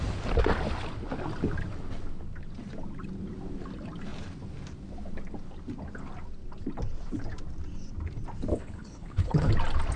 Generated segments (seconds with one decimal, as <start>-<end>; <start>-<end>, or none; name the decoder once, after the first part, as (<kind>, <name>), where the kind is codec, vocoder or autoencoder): 8.5-9.5 (codec, HILCodec)